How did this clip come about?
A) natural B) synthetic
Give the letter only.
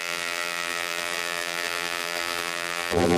B